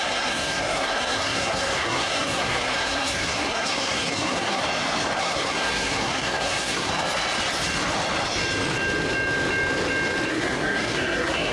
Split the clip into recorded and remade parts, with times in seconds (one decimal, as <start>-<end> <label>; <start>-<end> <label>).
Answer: 0.0-4.6 remade; 4.6-5.2 recorded; 5.2-6.9 remade; 6.9-10.3 recorded; 10.3-11.5 remade